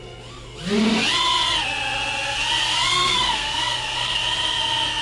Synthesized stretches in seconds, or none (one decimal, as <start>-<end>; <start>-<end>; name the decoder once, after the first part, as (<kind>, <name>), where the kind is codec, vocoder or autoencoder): 2.9-4.2 (codec, SNAC)